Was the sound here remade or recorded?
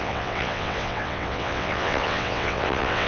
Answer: remade